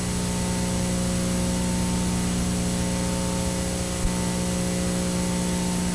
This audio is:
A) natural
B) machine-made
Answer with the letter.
A